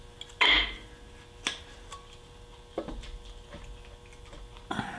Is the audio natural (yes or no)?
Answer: yes